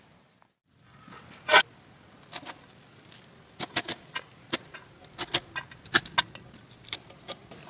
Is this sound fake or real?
real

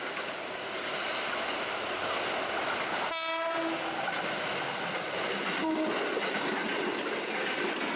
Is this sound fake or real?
real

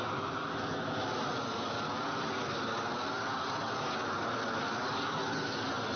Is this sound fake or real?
real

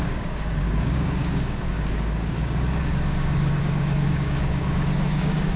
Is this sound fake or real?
fake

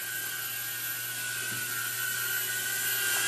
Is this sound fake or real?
real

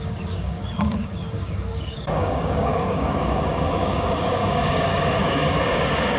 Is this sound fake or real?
fake